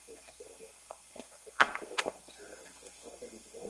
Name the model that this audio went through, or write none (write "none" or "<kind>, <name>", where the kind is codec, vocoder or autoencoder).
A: codec, SNAC